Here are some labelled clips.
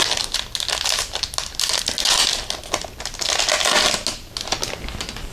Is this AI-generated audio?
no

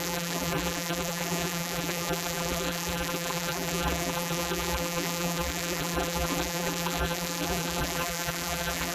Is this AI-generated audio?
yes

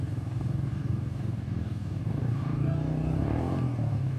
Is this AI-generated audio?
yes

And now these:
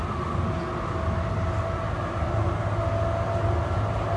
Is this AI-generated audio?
no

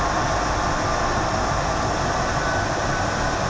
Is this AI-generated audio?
no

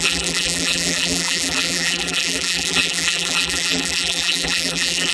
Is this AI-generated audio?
yes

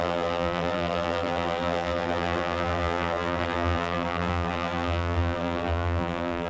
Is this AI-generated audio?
yes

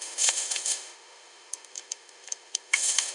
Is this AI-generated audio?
yes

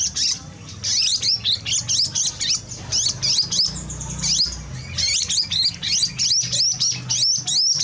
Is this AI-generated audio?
no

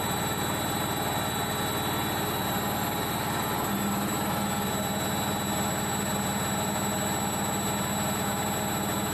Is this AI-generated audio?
no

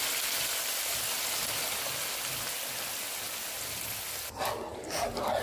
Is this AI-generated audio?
no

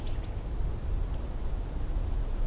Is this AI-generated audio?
no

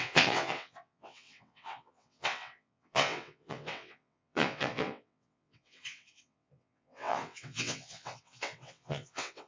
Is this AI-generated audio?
yes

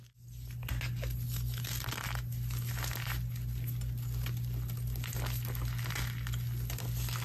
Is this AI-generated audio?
no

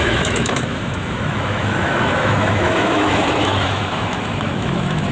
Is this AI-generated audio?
yes